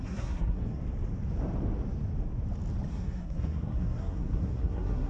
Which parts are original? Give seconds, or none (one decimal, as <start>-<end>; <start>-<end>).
0.8-2.9